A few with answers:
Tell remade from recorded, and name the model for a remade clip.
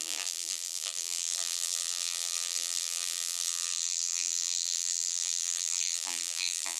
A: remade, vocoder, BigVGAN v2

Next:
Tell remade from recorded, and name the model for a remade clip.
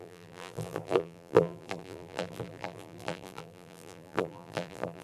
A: remade, vocoder, BigVGAN v2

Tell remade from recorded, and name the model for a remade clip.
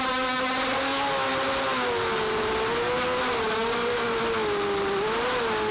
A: recorded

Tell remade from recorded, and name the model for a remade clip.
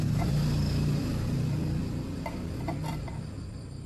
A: recorded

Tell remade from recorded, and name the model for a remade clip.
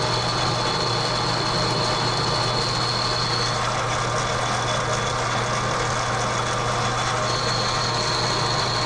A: recorded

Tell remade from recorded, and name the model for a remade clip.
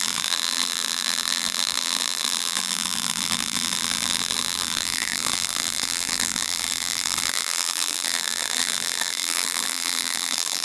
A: remade, vocoder, BigVGAN v2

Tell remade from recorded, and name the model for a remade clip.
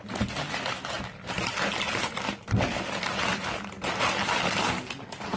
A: remade, vocoder, BigVGAN v2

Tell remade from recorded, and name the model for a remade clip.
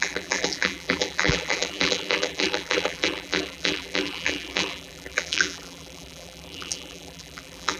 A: remade, vocoder, BigVGAN v2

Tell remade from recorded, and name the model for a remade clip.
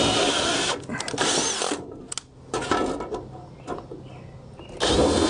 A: recorded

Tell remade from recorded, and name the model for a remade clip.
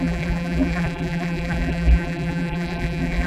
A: remade, vocoder, BigVGAN v2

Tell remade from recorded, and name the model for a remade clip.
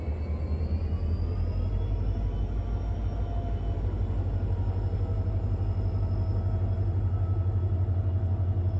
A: recorded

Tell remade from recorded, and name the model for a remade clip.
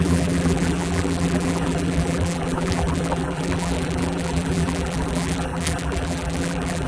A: remade, vocoder, BigVGAN v2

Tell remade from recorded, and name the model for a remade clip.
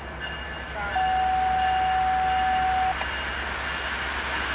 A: recorded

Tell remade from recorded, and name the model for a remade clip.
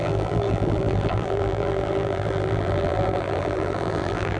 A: remade, vocoder, BigVGAN v2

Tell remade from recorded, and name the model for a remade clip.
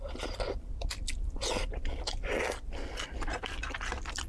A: recorded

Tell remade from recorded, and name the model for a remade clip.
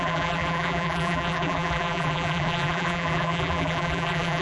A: remade, vocoder, BigVGAN v2